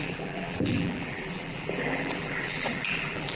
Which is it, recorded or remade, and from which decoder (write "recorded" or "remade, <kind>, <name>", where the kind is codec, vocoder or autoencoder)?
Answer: remade, vocoder, BigVGAN v2